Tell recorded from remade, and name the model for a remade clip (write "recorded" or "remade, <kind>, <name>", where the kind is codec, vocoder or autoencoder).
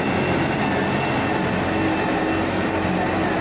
recorded